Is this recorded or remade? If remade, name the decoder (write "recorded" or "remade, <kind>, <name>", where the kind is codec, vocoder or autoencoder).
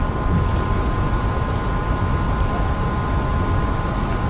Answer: recorded